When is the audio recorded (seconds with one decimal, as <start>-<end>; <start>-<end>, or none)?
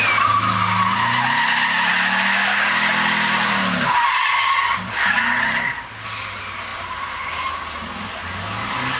0.0-9.0